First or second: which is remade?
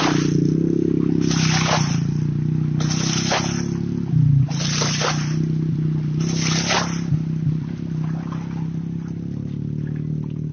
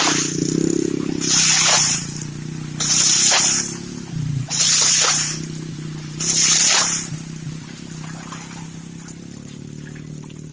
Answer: second